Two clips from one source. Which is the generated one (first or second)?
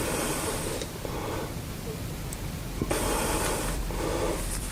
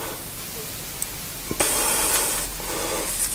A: first